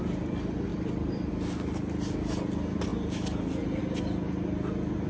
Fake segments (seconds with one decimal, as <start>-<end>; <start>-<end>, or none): 0.7-1.3